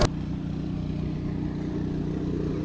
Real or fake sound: real